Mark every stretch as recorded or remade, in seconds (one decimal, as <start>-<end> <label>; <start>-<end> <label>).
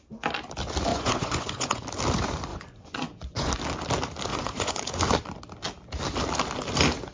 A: 0.0-0.9 recorded; 0.9-1.8 remade; 1.8-2.5 recorded; 2.5-3.5 remade; 3.5-4.3 recorded; 4.3-5.0 remade; 5.0-7.1 recorded